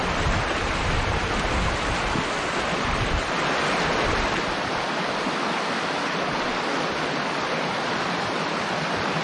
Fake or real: real